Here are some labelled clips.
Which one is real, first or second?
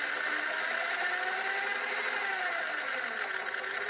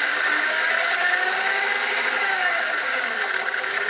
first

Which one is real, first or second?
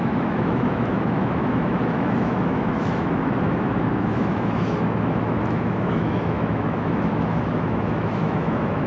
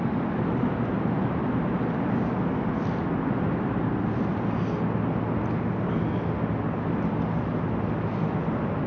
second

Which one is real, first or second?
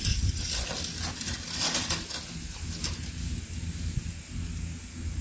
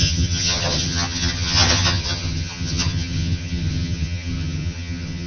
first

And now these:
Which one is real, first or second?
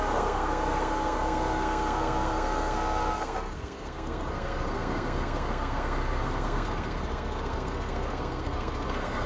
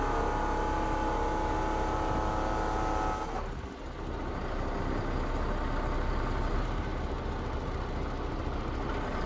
second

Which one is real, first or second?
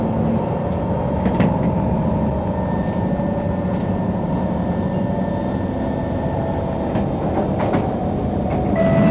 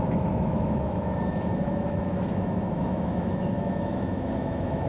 first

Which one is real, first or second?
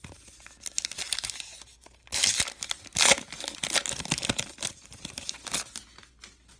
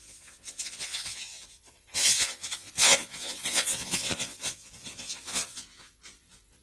first